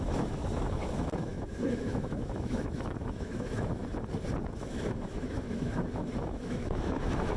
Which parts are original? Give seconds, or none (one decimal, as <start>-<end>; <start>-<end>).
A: 3.8-4.6